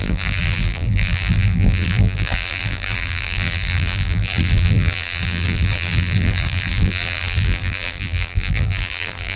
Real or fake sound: fake